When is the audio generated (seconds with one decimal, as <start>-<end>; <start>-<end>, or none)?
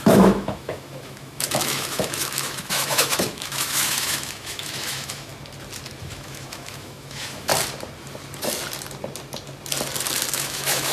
0.0-5.3; 6.0-7.5; 10.3-10.9